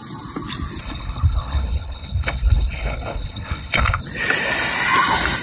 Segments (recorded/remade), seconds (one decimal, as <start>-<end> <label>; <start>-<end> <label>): 0.0-0.8 recorded; 0.8-4.0 remade; 4.0-5.4 recorded